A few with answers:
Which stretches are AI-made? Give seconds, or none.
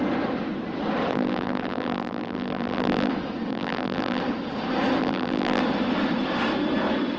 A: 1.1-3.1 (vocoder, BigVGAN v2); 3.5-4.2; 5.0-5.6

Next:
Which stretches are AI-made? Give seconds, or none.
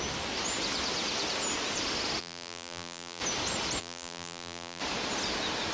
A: 2.2-3.2 (vocoder, BigVGAN v2); 3.8-4.8